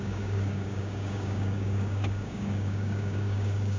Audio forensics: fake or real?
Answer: fake